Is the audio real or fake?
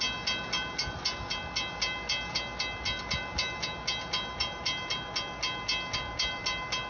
real